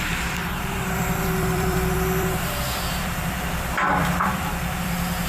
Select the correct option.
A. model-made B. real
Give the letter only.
A